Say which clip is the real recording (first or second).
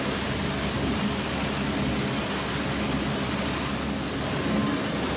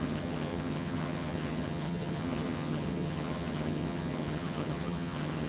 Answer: first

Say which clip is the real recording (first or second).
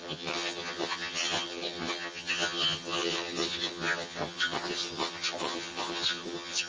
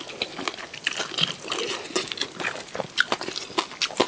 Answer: second